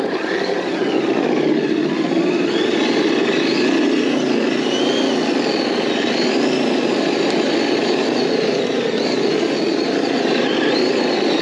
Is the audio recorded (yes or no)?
yes